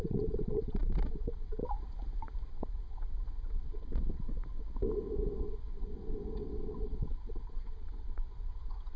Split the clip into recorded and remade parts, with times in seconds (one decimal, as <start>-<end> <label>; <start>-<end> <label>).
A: 0.0-1.6 remade; 1.6-2.5 recorded; 2.5-4.3 remade; 4.3-5.4 recorded; 5.4-9.0 remade